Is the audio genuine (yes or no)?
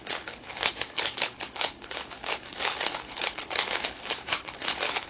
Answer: no